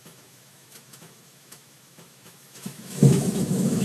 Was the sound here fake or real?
fake